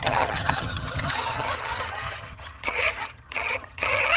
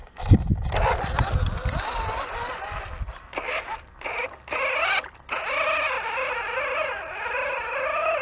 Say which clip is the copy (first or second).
first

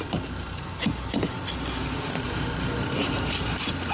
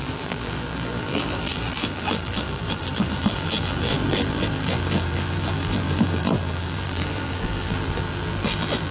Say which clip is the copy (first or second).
second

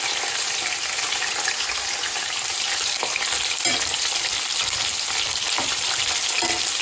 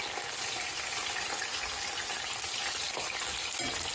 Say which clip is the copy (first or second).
first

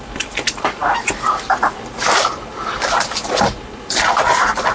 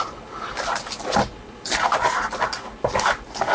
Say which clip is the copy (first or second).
first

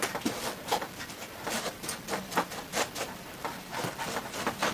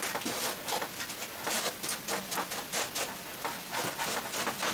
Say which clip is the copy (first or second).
first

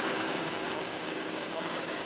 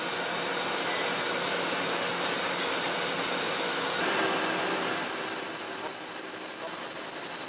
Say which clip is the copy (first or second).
first